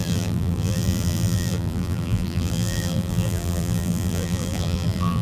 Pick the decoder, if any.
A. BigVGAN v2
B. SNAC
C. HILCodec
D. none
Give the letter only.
A